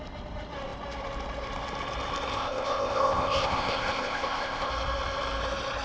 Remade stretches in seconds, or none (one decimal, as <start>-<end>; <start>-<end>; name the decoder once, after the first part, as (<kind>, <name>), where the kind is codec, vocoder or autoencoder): 2.3-4.7 (codec, ZipCodec)